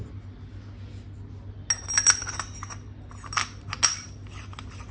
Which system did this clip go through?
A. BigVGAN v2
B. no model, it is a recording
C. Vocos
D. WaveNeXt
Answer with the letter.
B